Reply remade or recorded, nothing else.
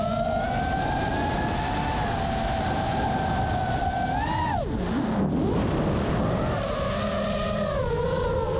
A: recorded